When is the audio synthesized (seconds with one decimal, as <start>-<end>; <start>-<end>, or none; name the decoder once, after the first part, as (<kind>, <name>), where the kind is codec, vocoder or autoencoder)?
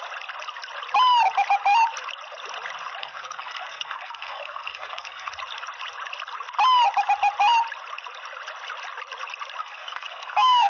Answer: 3.0-5.3 (codec, SNAC); 9.6-10.7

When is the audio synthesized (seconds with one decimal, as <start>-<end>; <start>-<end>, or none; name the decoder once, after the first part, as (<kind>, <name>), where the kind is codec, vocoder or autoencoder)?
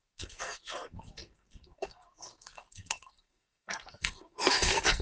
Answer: 0.0-5.0 (codec, SNAC)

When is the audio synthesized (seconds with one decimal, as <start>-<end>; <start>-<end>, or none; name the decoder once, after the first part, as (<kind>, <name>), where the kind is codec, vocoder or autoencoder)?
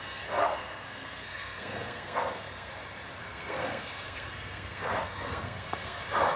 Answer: 0.4-2.7 (codec, SNAC); 3.2-6.0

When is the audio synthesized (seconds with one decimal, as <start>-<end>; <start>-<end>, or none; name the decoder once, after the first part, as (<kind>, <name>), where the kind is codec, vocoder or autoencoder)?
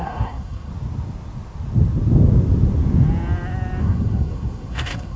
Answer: 0.0-0.7 (codec, SNAC); 3.8-5.2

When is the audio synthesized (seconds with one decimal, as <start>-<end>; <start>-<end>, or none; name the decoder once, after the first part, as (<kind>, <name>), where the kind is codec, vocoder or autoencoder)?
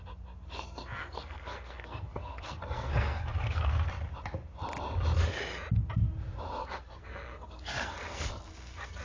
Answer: 1.0-3.9 (codec, SNAC); 6.6-9.0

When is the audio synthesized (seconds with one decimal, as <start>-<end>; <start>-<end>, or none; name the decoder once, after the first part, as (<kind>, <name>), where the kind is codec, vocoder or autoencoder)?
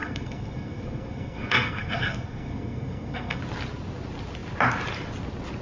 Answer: 0.0-3.4 (codec, SNAC)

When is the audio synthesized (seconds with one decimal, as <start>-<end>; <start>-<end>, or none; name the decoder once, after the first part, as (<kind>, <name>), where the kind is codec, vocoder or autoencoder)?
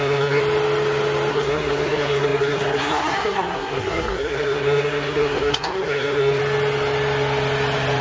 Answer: 0.0-0.4 (codec, SNAC); 1.3-6.4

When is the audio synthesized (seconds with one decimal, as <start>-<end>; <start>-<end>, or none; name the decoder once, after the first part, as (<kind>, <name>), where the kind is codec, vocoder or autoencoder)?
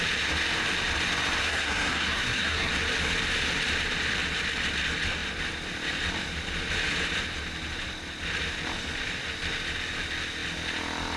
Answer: 1.4-2.7 (codec, SNAC)